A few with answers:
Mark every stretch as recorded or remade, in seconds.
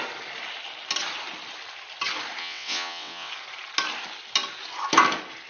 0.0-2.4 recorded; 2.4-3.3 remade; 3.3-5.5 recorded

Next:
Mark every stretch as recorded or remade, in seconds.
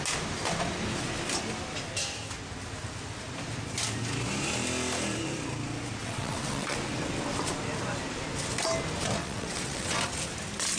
0.0-6.0 recorded; 6.0-6.8 remade; 6.8-9.2 recorded; 9.2-10.0 remade; 10.0-10.8 recorded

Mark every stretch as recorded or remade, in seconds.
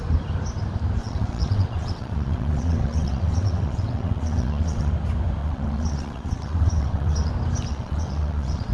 0.0-1.0 recorded; 1.0-4.9 remade; 4.9-5.4 recorded; 5.4-7.3 remade; 7.3-7.7 recorded; 7.7-8.7 remade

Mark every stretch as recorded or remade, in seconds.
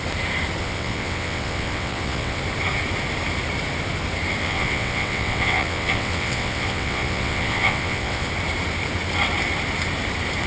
0.0-0.6 recorded; 0.6-2.4 remade; 2.4-4.4 recorded; 4.4-8.3 remade; 8.3-10.5 recorded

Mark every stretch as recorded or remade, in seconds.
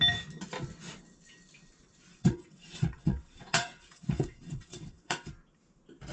0.0-2.1 recorded; 2.1-5.3 remade; 5.3-6.1 recorded